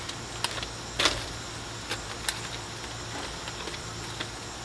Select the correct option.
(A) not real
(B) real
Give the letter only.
B